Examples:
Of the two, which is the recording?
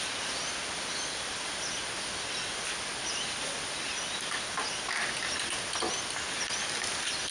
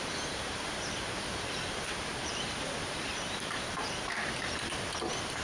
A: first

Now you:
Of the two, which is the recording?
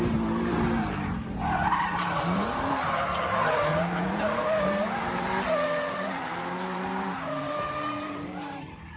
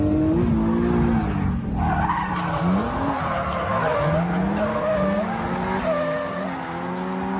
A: second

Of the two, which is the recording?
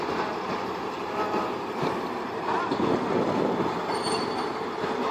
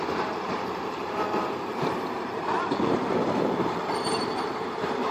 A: first